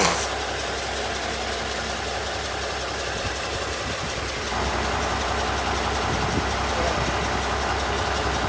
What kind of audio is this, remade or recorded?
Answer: recorded